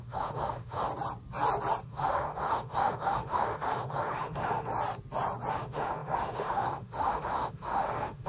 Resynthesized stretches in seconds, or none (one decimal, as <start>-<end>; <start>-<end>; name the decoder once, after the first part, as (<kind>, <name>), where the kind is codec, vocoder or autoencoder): 0.0-0.9 (autoencoder, DAC-VAE); 1.8-4.7; 5.5-8.3